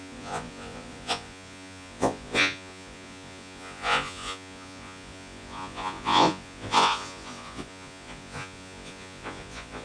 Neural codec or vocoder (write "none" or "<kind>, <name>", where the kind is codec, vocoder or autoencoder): vocoder, Vocos